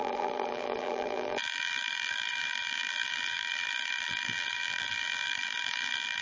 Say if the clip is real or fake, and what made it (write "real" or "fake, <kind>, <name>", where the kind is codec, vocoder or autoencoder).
fake, vocoder, BigVGAN v2